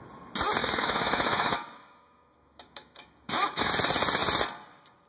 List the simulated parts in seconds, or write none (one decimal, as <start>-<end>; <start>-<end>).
0.6-3.7